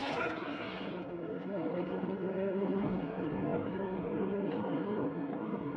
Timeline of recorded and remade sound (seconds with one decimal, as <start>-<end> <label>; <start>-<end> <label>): 0.0-5.8 remade